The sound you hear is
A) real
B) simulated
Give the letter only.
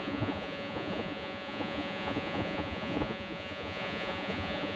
B